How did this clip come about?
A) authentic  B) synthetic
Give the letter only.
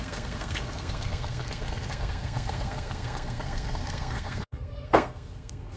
B